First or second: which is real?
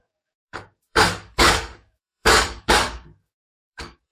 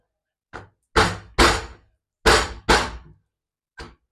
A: second